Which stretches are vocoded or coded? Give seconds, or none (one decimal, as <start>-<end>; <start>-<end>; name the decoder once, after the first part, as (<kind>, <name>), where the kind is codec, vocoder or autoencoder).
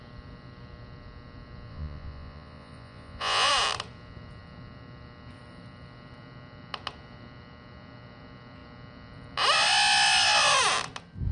1.7-3.5 (vocoder, Vocos)